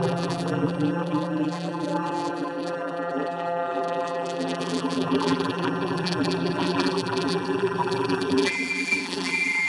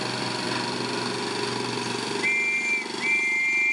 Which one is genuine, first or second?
second